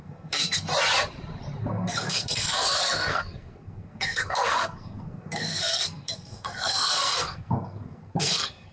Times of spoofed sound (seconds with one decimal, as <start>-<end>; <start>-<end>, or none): 0.0-0.7; 1.6-8.7